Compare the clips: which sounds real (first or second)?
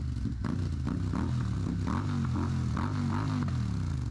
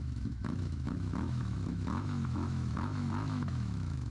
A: first